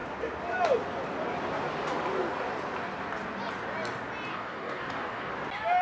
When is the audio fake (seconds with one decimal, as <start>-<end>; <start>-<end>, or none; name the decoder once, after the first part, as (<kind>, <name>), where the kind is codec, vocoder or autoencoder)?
4.3-5.3 (codec, DAC)